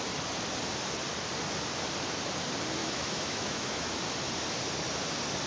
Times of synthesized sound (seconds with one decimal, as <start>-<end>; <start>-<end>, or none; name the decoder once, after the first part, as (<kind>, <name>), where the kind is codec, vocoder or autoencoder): 2.8-4.0 (autoencoder, DAC-VAE)

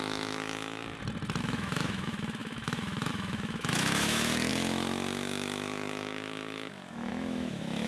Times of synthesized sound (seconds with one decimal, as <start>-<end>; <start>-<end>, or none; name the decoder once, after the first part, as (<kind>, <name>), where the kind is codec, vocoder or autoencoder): 0.0-0.8 (autoencoder, DAC-VAE); 1.4-7.9

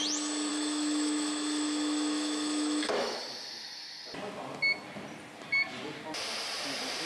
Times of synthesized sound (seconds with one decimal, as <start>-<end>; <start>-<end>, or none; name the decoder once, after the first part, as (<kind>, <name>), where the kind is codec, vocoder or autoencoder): 0.5-3.2 (autoencoder, DAC-VAE)

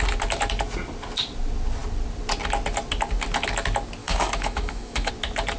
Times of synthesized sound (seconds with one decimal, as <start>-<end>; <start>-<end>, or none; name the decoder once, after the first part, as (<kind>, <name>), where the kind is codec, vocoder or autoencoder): 4.0-5.1 (autoencoder, DAC-VAE)